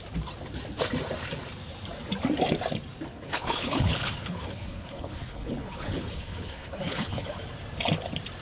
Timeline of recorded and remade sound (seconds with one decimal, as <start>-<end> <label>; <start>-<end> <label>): 0.0-3.1 recorded; 3.1-7.4 remade; 7.4-8.4 recorded